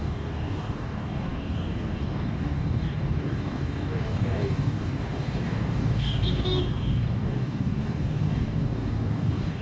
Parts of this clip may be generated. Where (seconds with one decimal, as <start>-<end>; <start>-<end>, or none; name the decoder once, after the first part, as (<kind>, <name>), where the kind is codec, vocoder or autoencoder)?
0.0-9.6 (codec, DAC)